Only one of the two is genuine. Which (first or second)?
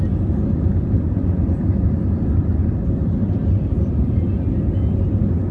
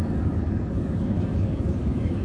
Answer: first